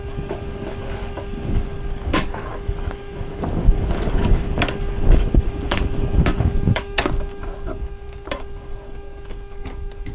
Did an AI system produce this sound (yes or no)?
yes